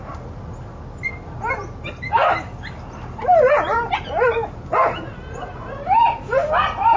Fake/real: real